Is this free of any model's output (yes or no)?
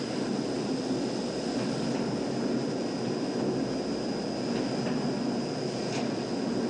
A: yes